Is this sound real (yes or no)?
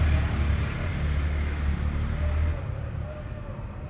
yes